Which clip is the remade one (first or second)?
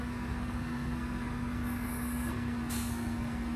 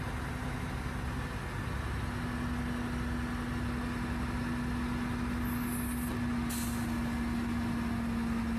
first